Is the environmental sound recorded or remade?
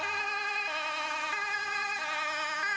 recorded